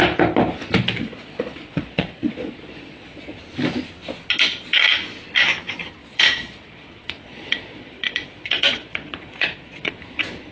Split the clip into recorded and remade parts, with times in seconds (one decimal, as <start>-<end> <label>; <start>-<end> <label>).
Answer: 0.0-1.0 recorded; 1.0-3.4 remade; 3.4-6.0 recorded; 6.0-9.9 remade; 9.9-10.5 recorded